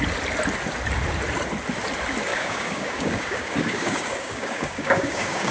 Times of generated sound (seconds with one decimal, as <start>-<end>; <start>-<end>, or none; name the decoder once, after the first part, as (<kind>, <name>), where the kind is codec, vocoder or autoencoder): 2.3-5.5 (codec, DAC)